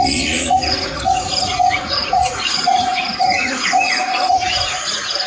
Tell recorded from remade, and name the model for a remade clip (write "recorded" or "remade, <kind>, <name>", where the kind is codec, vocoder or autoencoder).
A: remade, vocoder, Vocos